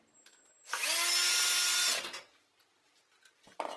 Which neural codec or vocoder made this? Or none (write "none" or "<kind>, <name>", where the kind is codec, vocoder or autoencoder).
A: none